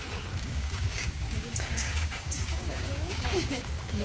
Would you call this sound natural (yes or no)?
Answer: no